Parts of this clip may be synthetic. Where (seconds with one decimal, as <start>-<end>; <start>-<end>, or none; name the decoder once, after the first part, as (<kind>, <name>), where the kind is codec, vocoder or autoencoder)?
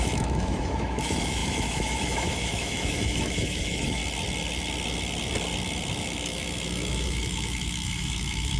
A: 0.0-4.0 (autoencoder, DAC-VAE); 6.0-8.6